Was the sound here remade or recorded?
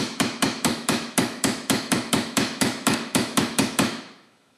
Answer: remade